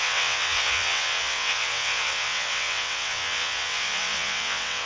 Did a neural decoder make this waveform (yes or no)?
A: yes